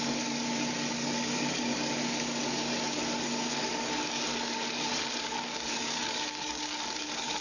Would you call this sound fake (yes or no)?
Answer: yes